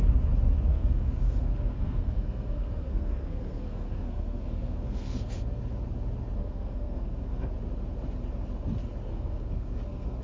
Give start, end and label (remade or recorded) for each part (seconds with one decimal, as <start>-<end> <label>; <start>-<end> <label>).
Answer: 0.0-0.7 recorded; 0.7-5.6 remade; 5.6-6.4 recorded; 6.4-7.5 remade; 7.5-9.1 recorded; 9.1-10.2 remade